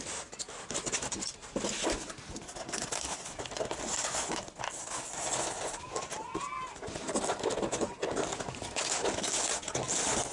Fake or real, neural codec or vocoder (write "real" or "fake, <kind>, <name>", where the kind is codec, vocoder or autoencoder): real